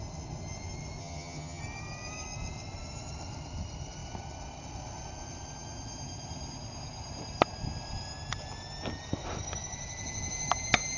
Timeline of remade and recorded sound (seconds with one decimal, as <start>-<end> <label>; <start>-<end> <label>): 0.0-1.0 recorded; 1.0-1.6 remade; 1.6-11.0 recorded